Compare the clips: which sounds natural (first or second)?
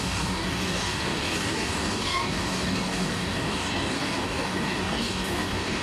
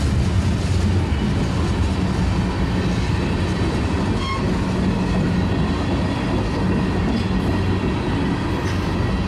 second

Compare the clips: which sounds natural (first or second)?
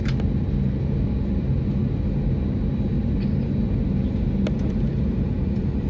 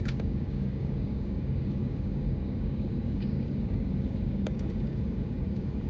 first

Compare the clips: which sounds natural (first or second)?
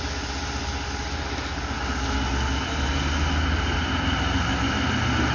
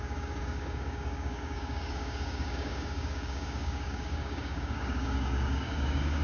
first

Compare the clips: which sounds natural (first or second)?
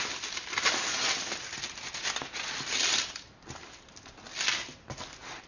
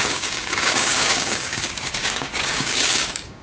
first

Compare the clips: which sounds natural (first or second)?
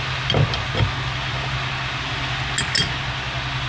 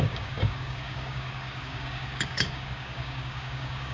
first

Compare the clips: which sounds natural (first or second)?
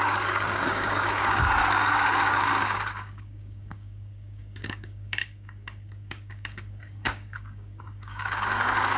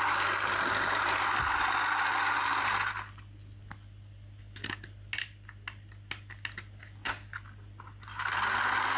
second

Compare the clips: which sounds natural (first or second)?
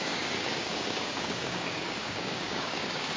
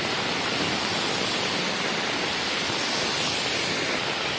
second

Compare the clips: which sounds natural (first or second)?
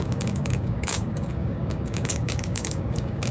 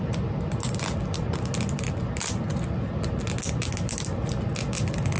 second